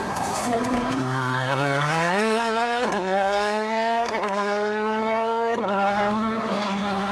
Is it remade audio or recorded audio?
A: remade